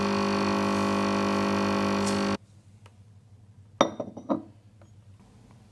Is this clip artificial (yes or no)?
no